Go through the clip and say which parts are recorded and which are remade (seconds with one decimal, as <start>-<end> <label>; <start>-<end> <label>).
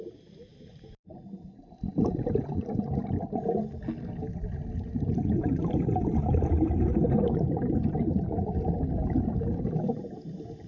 0.0-0.5 recorded; 0.5-3.0 remade; 3.0-5.4 recorded; 5.4-8.2 remade; 8.2-10.7 recorded